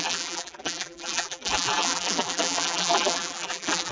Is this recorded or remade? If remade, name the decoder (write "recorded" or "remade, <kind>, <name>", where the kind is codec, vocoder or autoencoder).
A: remade, vocoder, BigVGAN v2